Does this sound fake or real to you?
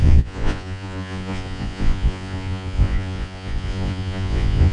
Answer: fake